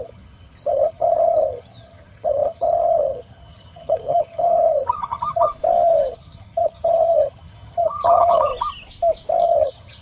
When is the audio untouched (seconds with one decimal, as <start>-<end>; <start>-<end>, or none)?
5.5-6.1; 8.5-9.4